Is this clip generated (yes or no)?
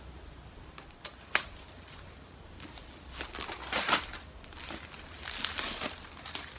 no